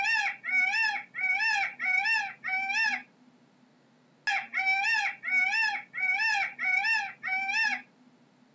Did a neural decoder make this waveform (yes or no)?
no